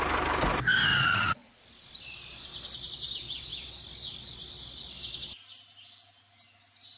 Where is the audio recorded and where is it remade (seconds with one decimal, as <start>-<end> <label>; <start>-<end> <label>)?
0.0-0.9 recorded; 0.9-1.6 remade; 1.6-7.0 recorded